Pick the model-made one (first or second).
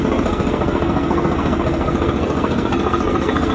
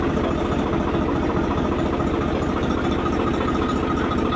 first